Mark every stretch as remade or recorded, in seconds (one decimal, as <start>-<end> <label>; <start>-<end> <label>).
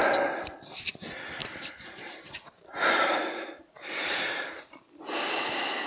0.0-1.4 recorded; 1.4-4.9 remade; 4.9-5.9 recorded